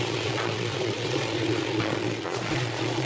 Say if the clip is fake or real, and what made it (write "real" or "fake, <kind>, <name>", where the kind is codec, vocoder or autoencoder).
fake, vocoder, Vocos